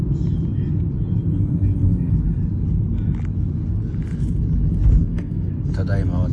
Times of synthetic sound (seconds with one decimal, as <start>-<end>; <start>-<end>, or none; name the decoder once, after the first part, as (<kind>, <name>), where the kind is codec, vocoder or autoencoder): 5.0-5.5 (codec, SNAC)

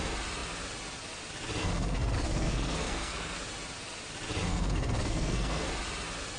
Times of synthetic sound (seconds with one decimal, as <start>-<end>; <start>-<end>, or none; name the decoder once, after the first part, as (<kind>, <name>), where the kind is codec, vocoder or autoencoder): 1.6-3.4 (codec, SNAC); 4.5-5.7

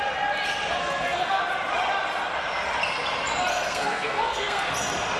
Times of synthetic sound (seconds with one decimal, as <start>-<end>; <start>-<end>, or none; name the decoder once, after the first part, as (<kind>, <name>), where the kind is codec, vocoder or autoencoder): 0.8-1.4 (codec, SNAC); 3.5-4.7

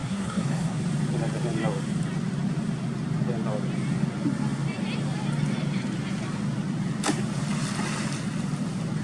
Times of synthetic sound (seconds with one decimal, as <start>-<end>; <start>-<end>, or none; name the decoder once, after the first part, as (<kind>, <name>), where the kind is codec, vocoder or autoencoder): 0.0-0.8 (codec, SNAC)

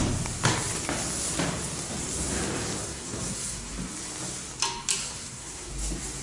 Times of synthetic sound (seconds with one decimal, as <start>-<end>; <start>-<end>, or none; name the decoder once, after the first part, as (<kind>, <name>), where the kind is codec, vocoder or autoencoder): 2.8-3.7 (codec, SNAC); 5.0-5.7

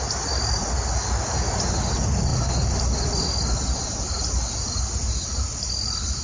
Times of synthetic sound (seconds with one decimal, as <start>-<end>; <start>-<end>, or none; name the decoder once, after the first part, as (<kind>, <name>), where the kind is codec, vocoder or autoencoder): none

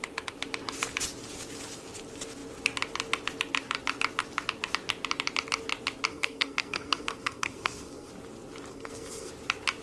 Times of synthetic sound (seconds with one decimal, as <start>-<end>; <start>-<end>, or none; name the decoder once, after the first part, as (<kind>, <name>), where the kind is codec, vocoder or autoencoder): 6.1-8.1 (codec, SNAC); 8.7-9.3

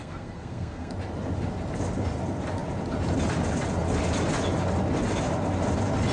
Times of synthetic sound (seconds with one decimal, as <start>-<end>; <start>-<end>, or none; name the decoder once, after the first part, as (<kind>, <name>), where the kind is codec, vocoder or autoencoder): 0.0-0.9 (codec, SNAC)